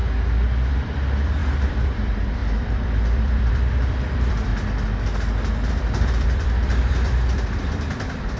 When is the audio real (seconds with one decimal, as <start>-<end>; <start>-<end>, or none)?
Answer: 0.0-0.7; 4.5-5.7